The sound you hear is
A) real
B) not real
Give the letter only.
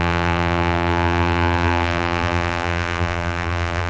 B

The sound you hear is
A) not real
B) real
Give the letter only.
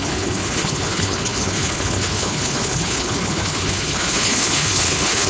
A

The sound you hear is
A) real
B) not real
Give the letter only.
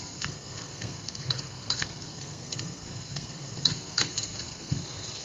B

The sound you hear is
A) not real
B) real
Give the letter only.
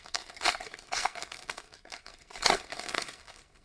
A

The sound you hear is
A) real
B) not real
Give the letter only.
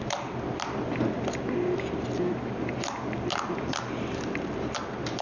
A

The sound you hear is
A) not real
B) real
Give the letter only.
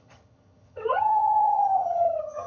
A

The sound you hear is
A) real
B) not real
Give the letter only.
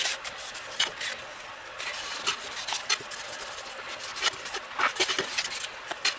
A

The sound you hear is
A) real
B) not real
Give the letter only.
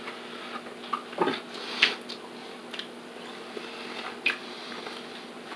A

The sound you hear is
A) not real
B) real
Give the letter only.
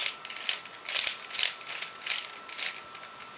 B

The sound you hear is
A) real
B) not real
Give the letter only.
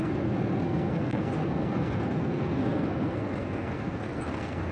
B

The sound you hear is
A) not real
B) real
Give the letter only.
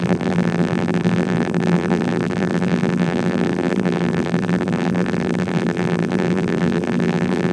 A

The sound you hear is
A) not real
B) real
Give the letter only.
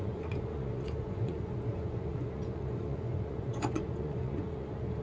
A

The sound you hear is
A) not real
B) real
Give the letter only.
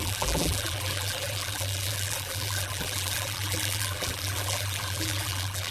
A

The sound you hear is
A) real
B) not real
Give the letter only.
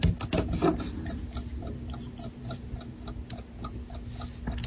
A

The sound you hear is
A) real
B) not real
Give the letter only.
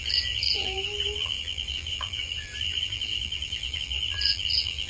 B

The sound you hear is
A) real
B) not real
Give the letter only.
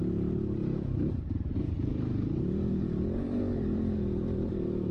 B